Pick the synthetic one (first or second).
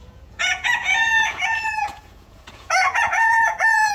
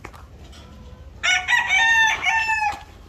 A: first